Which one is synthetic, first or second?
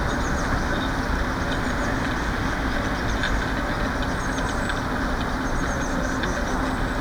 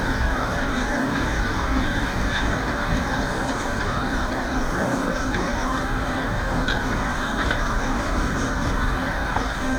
second